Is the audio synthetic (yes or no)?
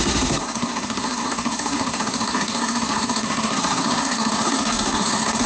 yes